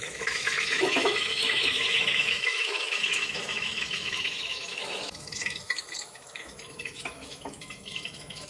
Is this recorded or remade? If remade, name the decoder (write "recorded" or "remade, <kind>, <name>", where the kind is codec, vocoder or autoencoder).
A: remade, autoencoder, DAC-VAE